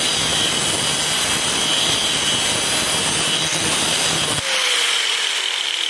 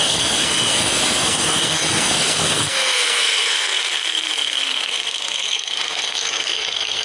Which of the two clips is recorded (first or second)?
first